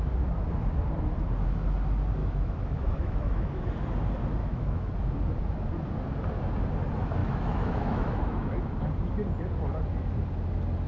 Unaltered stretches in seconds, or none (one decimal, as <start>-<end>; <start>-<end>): 0.0-2.2; 3.7-4.4; 4.9-7.2; 8.5-10.9